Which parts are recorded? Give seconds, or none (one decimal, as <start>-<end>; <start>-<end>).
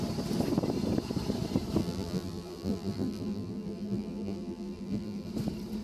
0.0-1.8; 5.3-5.8